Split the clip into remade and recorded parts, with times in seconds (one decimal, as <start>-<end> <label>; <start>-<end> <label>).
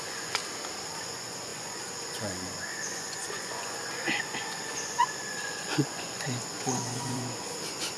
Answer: 0.0-0.4 remade; 0.4-1.0 recorded; 1.0-8.0 remade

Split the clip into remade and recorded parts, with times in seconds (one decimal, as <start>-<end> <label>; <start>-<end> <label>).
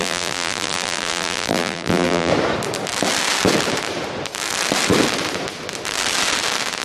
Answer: 0.0-2.3 remade; 2.3-6.8 recorded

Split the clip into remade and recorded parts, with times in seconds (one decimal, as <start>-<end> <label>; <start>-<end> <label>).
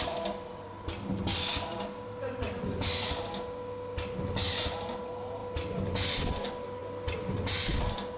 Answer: 0.0-8.2 recorded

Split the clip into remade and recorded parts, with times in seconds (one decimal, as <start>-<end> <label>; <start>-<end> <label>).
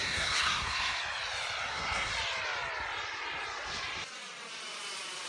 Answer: 0.0-1.0 remade; 1.0-1.7 recorded; 1.7-2.1 remade; 2.1-5.3 recorded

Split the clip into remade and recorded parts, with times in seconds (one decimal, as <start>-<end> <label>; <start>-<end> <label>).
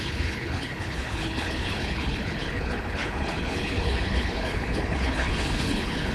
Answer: 0.0-6.1 remade